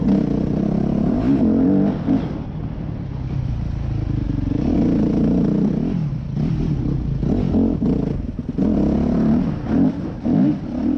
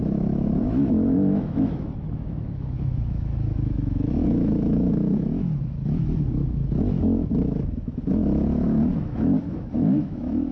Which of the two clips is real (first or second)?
first